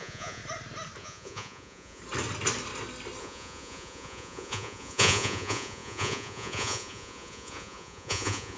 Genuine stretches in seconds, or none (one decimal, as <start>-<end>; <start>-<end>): 0.4-1.0; 2.0-3.2